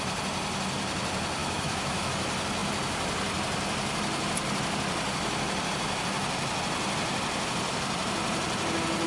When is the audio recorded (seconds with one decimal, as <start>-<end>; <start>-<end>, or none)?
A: 0.0-1.4; 2.1-9.1